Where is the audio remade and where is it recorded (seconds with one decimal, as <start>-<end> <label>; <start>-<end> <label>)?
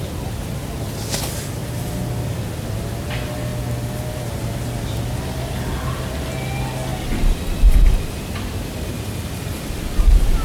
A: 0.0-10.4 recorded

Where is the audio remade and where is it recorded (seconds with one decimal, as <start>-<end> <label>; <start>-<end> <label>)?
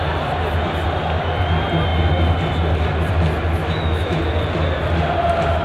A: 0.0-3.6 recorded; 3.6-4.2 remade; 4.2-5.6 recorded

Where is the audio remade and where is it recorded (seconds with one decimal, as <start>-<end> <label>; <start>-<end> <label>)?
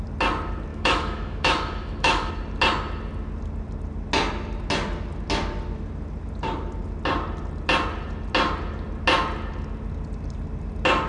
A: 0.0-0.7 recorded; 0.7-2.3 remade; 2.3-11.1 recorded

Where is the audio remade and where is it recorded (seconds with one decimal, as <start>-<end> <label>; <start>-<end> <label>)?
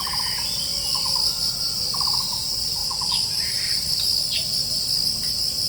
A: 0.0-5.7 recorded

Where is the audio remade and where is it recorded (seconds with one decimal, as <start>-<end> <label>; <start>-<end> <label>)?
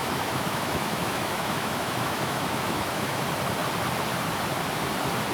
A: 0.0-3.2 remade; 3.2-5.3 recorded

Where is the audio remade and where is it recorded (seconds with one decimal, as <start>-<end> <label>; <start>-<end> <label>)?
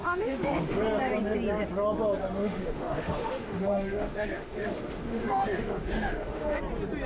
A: 0.0-0.8 remade; 0.8-2.4 recorded; 2.4-6.6 remade; 6.6-7.1 recorded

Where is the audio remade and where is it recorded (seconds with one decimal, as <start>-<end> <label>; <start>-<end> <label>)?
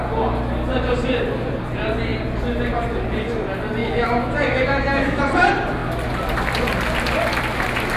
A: 0.0-3.8 recorded; 3.8-5.2 remade; 5.2-8.0 recorded